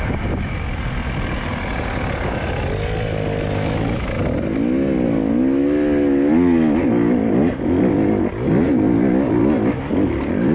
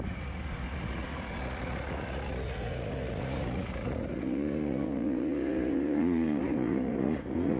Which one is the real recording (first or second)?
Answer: first